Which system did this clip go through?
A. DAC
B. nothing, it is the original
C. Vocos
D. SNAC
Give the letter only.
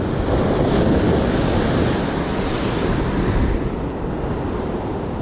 B